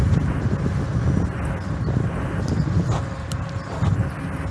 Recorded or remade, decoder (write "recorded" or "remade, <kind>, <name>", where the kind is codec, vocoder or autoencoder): recorded